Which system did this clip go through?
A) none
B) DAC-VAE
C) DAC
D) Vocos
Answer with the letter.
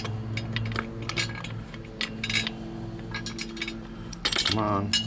A